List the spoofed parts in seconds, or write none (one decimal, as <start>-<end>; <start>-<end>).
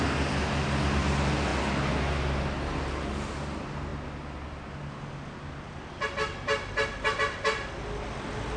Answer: none